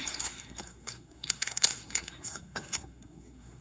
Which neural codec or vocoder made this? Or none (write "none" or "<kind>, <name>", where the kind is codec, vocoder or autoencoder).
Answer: codec, SNAC